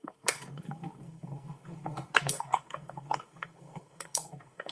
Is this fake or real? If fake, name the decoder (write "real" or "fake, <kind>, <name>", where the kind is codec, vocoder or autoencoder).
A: fake, codec, SNAC